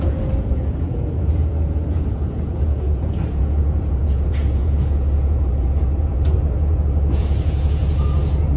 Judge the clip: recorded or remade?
remade